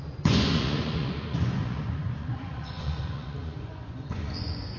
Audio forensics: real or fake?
fake